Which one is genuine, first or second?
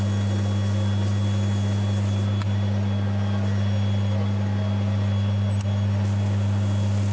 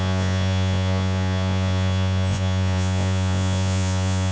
first